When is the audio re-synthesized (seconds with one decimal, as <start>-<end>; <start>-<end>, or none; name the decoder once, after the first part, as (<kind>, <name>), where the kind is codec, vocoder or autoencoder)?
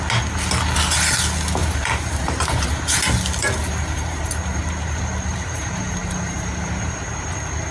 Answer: 1.6-2.8 (vocoder, BigVGAN v2); 3.4-4.2; 5.3-7.0